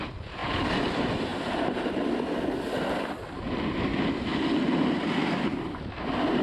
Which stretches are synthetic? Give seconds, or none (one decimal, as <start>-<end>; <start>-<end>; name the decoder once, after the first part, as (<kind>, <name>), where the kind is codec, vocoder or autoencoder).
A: none